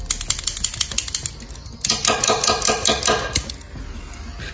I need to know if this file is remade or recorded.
recorded